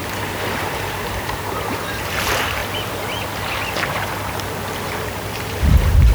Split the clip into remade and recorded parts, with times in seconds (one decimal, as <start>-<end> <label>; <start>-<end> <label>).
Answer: 0.0-0.6 recorded; 0.6-2.6 remade; 2.6-4.7 recorded; 4.7-6.1 remade